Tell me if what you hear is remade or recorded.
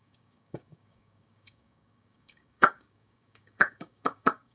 remade